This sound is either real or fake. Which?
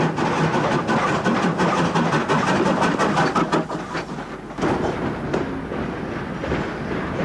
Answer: real